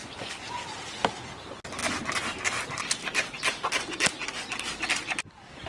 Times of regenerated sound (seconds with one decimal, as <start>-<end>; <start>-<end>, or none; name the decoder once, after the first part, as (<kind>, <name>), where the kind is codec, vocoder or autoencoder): 0.0-0.6 (vocoder, Vocos)